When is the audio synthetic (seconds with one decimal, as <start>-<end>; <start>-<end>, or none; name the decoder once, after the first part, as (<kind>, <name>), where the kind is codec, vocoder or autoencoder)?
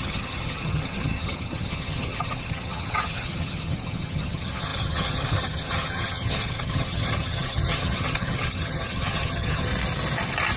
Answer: 0.0-9.7 (vocoder, HiFi-GAN)